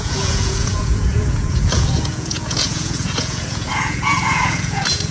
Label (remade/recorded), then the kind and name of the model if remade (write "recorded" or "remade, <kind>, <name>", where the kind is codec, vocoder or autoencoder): remade, vocoder, Vocos